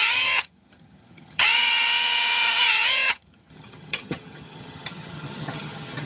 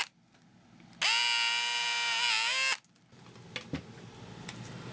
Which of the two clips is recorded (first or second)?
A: second